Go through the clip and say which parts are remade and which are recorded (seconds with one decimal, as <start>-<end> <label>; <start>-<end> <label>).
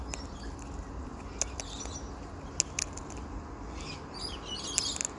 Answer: 0.0-5.2 recorded